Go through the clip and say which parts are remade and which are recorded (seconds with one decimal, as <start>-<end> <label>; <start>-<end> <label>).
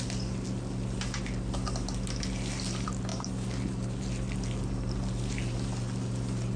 0.0-6.6 recorded